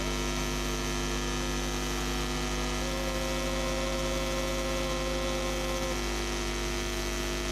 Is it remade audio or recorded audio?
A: recorded